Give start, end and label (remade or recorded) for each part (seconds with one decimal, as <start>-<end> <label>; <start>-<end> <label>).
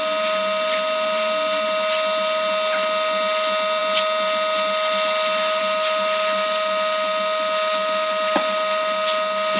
0.0-9.6 recorded